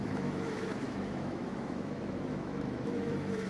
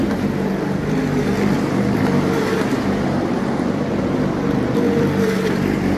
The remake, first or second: first